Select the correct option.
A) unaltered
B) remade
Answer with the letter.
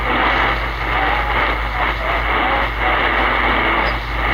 A